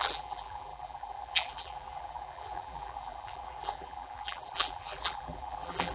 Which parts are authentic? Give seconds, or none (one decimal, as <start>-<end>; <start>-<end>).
none